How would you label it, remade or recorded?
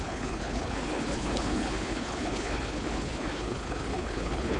remade